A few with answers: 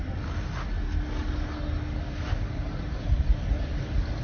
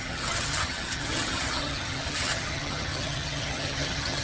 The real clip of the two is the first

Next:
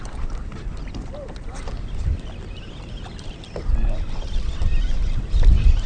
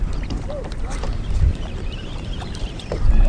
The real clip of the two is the first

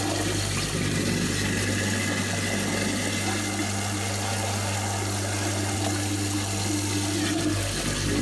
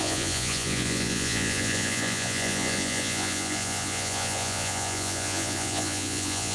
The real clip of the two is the first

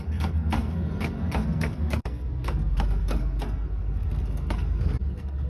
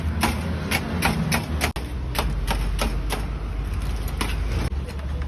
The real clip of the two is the second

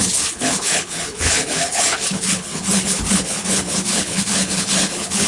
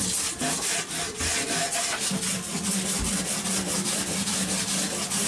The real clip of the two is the second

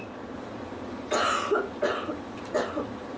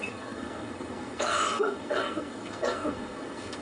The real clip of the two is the first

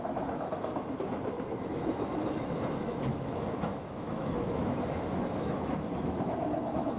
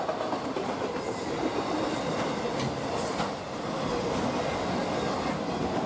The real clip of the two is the second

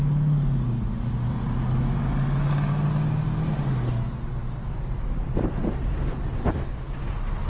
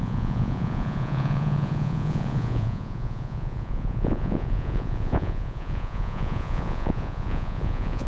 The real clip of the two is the first